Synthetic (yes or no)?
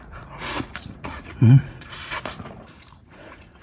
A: yes